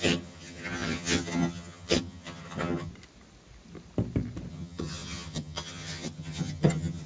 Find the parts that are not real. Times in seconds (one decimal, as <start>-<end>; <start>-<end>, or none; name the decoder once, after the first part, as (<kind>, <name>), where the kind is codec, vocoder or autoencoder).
0.0-2.9 (vocoder, HiFi-GAN); 4.5-7.1